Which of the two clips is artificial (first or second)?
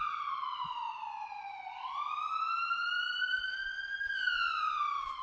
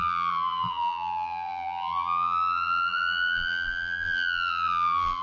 second